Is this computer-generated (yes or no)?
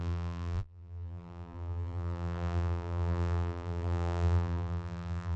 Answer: yes